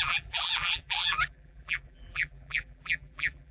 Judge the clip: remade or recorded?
remade